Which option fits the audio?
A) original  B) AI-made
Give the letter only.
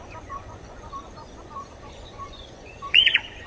B